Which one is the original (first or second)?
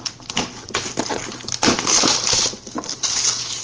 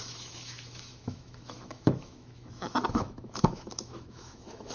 first